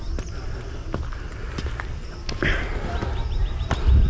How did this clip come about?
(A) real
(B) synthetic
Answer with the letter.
A